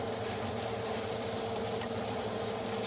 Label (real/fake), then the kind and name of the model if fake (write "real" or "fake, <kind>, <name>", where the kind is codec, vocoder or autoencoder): real